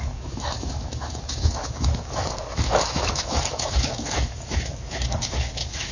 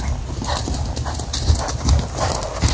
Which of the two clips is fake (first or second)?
first